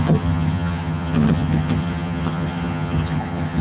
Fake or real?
fake